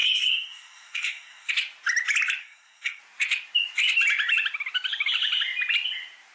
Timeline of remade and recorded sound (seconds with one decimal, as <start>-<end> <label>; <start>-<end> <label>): 0.0-1.5 remade; 1.5-2.4 recorded; 2.4-3.0 remade; 3.0-6.3 recorded

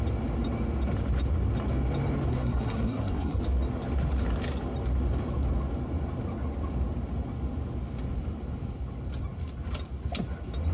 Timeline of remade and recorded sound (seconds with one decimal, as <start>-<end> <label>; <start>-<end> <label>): 0.0-2.3 recorded; 2.3-3.4 remade; 3.4-10.7 recorded

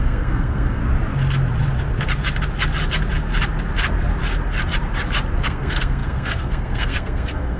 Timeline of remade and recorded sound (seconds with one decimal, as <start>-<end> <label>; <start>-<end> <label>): 0.0-0.8 remade; 0.8-5.4 recorded; 5.4-7.6 remade

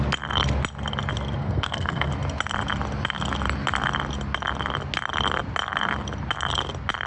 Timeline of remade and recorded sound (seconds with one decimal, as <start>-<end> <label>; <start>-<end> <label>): 0.0-1.4 recorded; 1.4-2.1 remade; 2.1-7.1 recorded

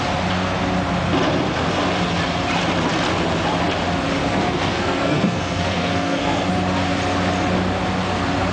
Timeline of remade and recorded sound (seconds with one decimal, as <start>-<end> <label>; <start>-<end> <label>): 0.0-4.2 recorded; 4.2-6.5 remade; 6.5-8.5 recorded